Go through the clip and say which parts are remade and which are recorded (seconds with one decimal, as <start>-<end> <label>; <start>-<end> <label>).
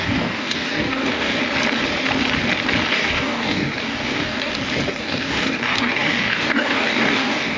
0.0-1.4 remade; 1.4-2.9 recorded; 2.9-4.5 remade; 4.5-5.0 recorded; 5.0-7.6 remade